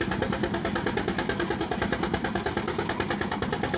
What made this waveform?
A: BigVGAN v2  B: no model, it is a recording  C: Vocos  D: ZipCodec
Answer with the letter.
B